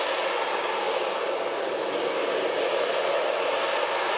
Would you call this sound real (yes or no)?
yes